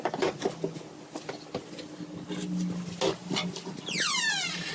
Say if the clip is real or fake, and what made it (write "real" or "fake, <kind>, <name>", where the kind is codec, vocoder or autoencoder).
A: real